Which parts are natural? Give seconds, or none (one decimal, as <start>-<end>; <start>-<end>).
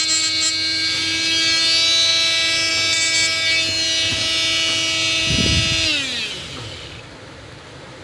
0.0-8.0